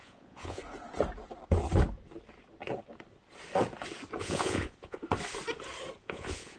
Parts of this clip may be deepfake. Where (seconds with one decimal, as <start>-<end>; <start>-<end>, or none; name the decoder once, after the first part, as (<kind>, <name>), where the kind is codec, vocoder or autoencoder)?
0.0-0.6 (vocoder, Vocos); 4.2-5.0; 6.0-6.6